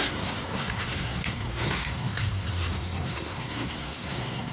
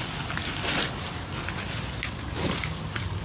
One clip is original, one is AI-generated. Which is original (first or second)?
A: second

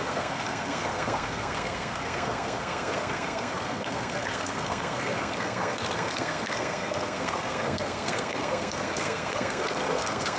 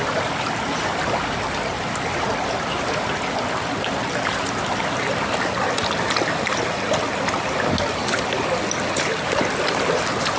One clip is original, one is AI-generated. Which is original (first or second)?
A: second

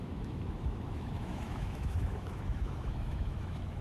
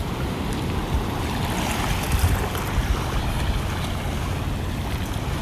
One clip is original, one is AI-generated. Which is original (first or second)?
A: second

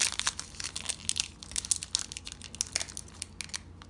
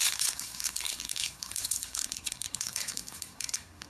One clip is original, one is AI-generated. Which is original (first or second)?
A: first